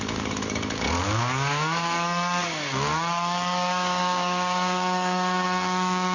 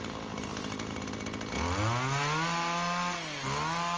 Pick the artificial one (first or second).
first